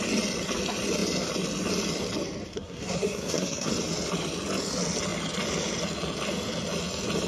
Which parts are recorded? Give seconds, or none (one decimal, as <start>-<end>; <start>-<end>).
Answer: 0.0-2.5; 3.7-7.3